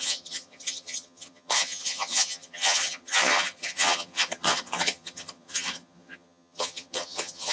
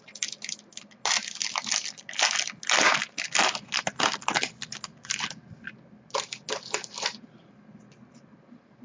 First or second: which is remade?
first